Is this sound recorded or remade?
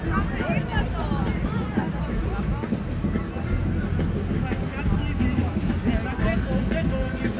recorded